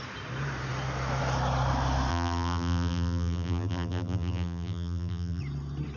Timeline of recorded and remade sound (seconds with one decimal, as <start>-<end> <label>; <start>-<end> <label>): 0.0-2.1 recorded; 2.1-5.4 remade; 5.4-6.0 recorded